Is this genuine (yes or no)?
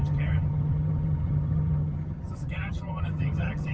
no